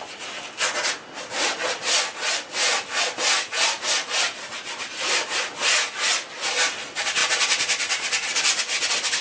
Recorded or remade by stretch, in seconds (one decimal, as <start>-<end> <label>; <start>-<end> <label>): 0.0-7.2 recorded; 7.2-8.6 remade; 8.6-9.2 recorded